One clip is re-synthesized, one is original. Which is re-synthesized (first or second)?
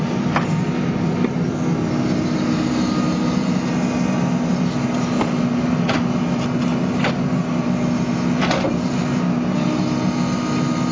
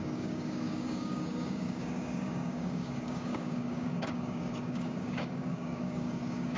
second